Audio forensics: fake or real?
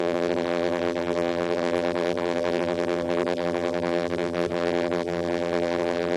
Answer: fake